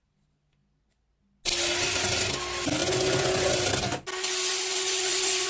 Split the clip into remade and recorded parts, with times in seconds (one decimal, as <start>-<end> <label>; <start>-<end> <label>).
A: 0.0-2.8 recorded; 2.8-3.5 remade; 3.5-4.5 recorded; 4.5-5.5 remade